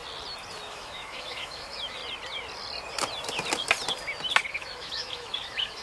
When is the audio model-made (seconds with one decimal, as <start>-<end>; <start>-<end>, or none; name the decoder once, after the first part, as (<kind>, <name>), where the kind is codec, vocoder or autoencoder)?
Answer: 0.7-2.0 (autoencoder, DAC-VAE); 4.5-5.8